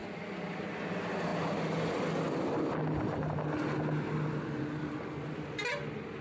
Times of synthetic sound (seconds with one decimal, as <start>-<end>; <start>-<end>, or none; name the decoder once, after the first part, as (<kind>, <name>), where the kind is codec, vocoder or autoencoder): none